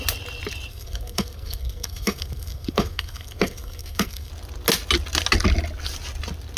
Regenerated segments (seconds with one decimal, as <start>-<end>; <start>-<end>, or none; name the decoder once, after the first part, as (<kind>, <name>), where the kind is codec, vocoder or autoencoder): 0.7-4.3 (codec, SNAC)